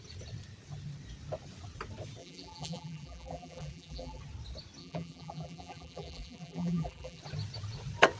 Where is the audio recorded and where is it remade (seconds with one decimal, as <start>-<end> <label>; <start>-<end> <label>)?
0.0-2.2 recorded; 2.2-4.2 remade; 4.2-4.8 recorded; 4.8-7.2 remade; 7.2-8.2 recorded